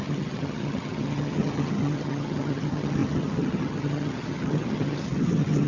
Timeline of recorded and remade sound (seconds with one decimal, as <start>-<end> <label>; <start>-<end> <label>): 0.0-5.7 remade